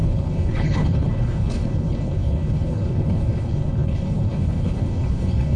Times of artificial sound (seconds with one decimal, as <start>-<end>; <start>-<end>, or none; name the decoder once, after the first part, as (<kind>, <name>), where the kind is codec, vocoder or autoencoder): 0.0-5.6 (codec, HILCodec)